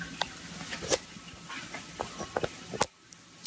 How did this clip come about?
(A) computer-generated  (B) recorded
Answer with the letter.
B